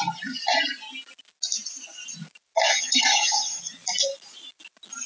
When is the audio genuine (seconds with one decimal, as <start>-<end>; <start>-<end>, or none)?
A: 0.0-2.7; 3.6-5.1